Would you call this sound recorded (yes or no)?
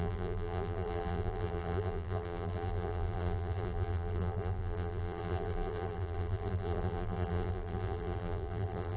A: no